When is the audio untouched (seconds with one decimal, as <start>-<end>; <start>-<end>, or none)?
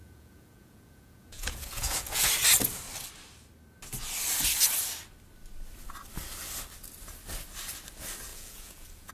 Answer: 2.3-8.3